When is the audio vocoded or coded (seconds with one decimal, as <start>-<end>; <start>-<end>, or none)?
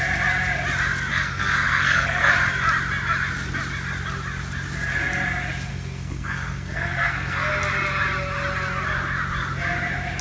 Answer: 1.1-2.3; 5.7-7.5